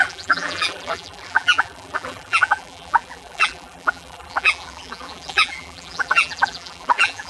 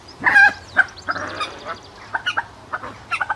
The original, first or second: second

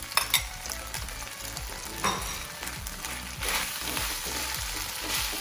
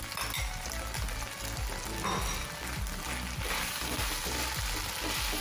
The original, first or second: second